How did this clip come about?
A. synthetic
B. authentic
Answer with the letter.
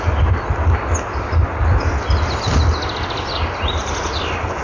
B